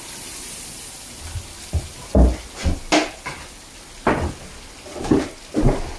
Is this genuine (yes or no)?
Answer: yes